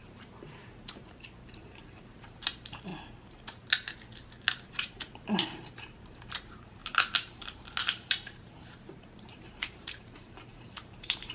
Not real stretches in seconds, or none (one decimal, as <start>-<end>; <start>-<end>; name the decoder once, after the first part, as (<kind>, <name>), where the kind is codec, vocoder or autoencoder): 0.0-2.9 (vocoder, BigVGAN v2); 4.5-6.8; 7.8-11.3